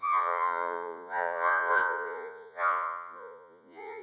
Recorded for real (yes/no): no